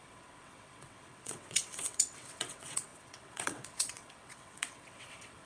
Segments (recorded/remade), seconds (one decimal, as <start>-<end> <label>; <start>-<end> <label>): 0.0-5.5 remade